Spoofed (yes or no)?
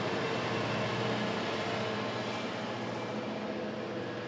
no